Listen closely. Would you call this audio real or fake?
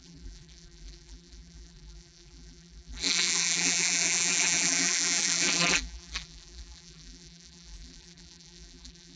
fake